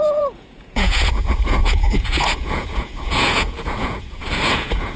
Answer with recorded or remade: remade